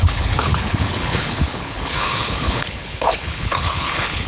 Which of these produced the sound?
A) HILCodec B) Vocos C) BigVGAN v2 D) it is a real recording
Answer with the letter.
A